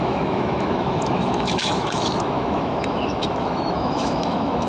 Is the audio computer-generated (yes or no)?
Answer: yes